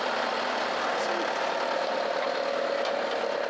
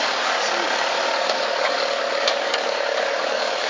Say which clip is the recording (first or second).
first